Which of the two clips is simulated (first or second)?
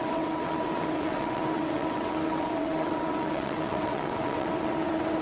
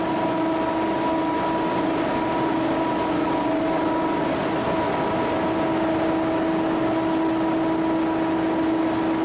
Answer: first